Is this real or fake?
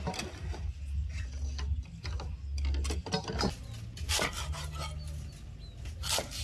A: real